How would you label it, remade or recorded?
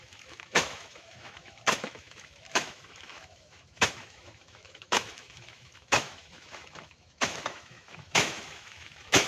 remade